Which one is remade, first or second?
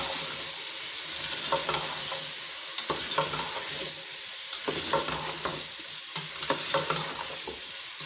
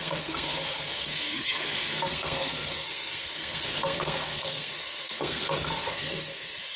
second